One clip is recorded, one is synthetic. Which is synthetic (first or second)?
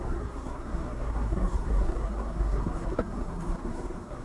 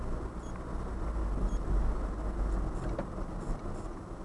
first